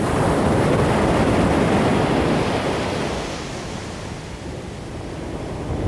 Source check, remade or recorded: recorded